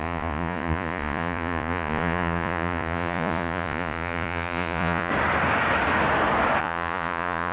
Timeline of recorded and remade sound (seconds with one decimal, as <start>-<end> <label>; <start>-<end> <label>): 0.0-5.1 remade; 5.1-6.6 recorded; 6.6-7.5 remade